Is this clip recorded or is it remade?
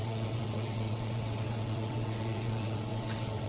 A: remade